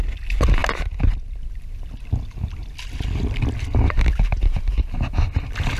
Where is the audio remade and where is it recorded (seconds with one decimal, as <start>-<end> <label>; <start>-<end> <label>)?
0.0-5.8 recorded